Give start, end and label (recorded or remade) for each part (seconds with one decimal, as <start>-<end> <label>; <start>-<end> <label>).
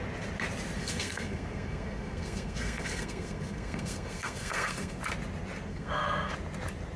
0.0-0.8 recorded; 0.8-5.0 remade; 5.0-5.7 recorded; 5.7-6.3 remade; 6.3-7.0 recorded